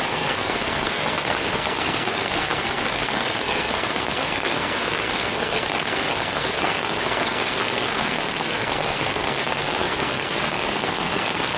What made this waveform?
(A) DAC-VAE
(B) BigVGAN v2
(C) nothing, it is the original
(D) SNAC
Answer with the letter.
D